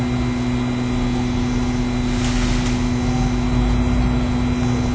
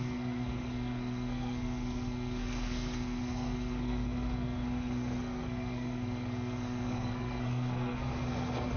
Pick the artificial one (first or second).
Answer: second